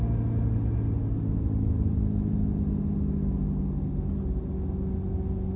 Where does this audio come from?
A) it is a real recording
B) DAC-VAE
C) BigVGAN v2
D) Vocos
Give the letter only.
A